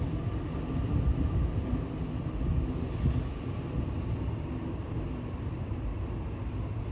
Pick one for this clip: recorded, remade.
recorded